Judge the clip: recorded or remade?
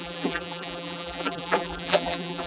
remade